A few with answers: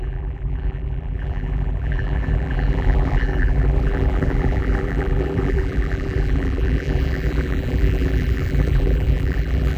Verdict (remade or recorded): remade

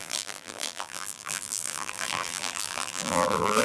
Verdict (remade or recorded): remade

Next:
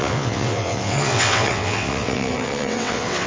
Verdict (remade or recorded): remade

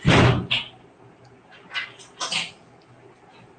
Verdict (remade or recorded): recorded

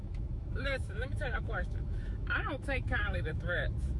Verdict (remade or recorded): remade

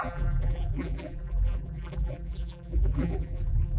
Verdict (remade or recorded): remade